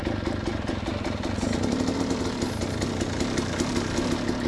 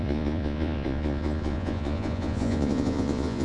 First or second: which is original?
first